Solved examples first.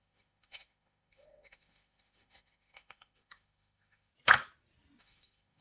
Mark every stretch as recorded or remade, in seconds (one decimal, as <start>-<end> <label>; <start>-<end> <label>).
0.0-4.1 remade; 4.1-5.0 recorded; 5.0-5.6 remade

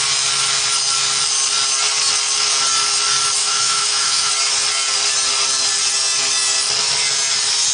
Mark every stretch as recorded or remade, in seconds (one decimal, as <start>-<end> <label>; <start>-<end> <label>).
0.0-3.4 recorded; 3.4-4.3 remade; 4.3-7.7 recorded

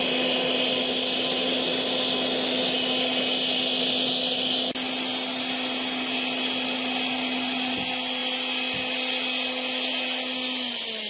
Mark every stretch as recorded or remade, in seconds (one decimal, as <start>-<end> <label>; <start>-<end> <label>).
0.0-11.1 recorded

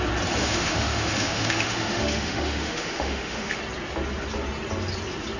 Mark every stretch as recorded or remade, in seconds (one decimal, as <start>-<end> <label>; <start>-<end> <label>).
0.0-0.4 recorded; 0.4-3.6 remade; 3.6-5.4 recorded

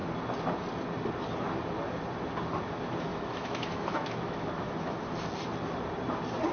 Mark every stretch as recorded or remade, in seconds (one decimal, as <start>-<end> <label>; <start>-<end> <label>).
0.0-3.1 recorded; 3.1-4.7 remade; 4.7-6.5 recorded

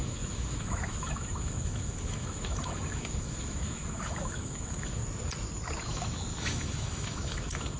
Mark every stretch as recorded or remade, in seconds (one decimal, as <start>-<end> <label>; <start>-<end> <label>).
0.0-5.0 remade; 5.0-5.8 recorded; 5.8-7.8 remade

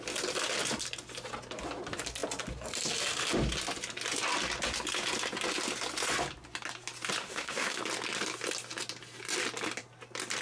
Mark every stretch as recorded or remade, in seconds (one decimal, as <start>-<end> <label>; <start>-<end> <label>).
0.0-7.2 recorded; 7.2-7.8 remade; 7.8-10.4 recorded

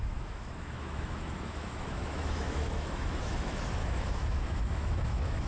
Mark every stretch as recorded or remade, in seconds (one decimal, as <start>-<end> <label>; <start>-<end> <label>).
0.0-5.5 remade